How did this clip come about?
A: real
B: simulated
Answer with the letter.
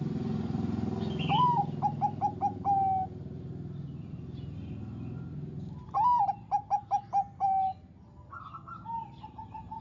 A